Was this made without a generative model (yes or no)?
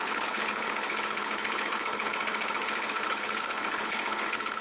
no